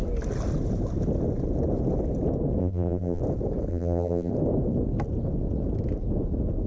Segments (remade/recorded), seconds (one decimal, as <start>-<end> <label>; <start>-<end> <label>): 0.0-2.6 recorded; 2.6-3.2 remade; 3.2-3.7 recorded; 3.7-4.3 remade; 4.3-6.7 recorded